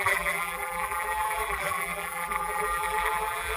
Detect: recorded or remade remade